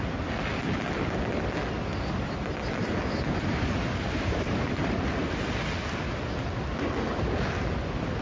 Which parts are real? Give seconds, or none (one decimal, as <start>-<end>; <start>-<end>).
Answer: 0.0-2.8; 5.6-8.2